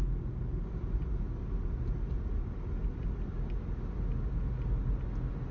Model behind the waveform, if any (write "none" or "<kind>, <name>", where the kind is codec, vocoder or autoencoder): none